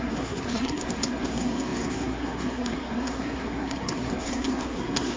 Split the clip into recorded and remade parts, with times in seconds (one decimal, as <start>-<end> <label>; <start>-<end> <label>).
0.0-5.2 remade